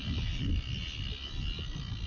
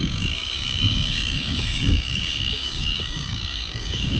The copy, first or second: second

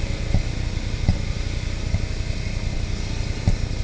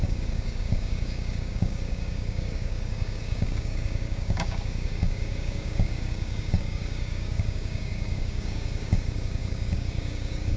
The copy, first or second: second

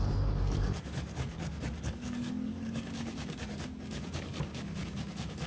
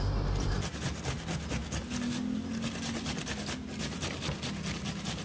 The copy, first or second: first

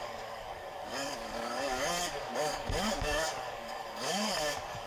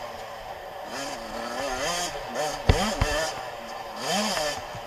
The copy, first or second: first